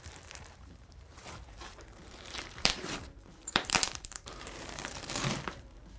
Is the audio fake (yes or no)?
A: yes